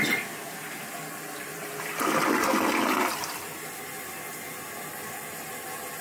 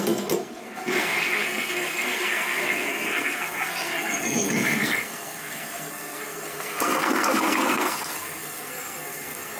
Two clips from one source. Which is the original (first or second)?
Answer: first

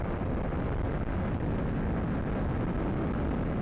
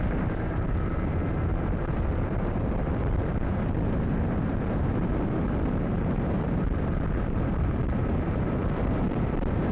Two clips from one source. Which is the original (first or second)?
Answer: first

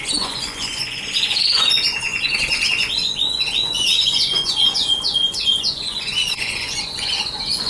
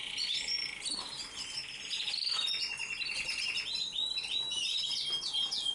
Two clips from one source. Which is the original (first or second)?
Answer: second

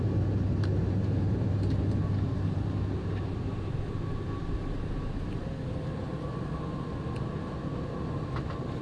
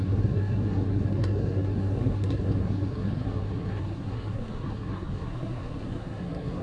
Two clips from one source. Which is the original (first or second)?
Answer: first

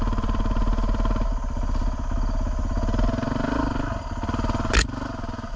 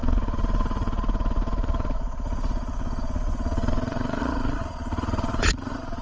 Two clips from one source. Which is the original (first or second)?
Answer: first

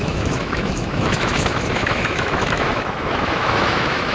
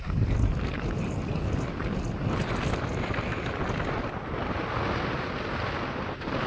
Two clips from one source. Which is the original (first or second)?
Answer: second